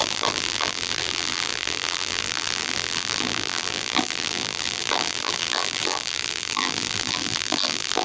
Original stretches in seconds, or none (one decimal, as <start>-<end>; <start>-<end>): none